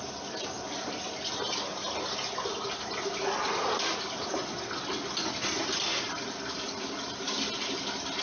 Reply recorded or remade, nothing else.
recorded